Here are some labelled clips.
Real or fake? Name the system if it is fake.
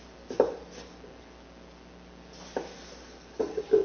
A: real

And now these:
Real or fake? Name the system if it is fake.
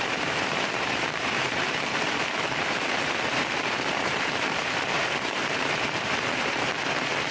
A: fake, vocoder, BigVGAN v2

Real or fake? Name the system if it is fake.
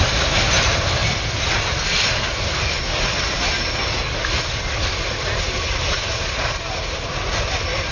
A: real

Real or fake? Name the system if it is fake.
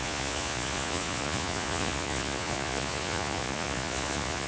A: fake, vocoder, Vocos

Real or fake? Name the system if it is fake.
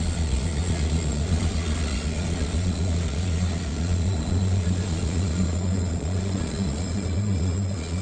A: fake, vocoder, Vocos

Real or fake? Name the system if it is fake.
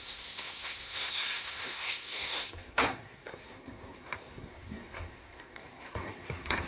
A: fake, codec, SNAC